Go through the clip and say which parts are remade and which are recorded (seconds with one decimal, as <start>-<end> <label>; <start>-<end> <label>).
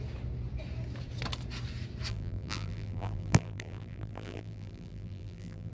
0.0-2.1 recorded; 2.1-5.7 remade